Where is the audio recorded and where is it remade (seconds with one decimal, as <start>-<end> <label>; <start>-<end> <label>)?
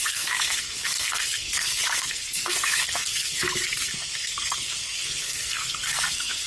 0.0-6.5 remade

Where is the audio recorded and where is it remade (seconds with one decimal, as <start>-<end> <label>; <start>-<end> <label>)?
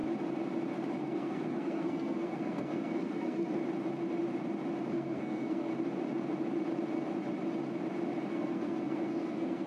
0.0-1.0 recorded; 1.0-3.6 remade; 3.6-4.9 recorded; 4.9-5.7 remade; 5.7-8.3 recorded; 8.3-9.7 remade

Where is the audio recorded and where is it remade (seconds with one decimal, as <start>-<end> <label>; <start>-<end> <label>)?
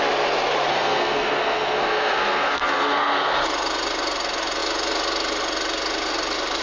0.0-0.7 recorded; 0.7-3.4 remade; 3.4-6.6 recorded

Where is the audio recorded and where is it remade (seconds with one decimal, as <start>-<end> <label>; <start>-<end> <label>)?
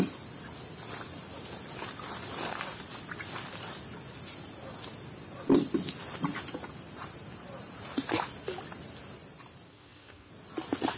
0.0-9.7 recorded; 9.7-10.3 remade; 10.3-11.0 recorded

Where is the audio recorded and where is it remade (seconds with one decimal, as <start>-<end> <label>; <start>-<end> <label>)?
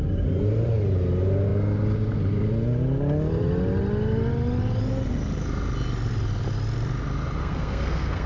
0.0-7.4 recorded; 7.4-8.3 remade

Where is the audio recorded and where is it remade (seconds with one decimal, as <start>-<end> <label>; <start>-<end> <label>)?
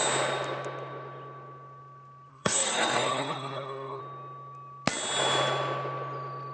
0.0-2.3 recorded; 2.3-4.0 remade; 4.0-6.5 recorded